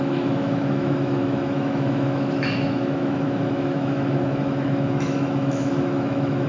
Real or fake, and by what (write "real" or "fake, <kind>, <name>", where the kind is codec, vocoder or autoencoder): fake, autoencoder, DAC-VAE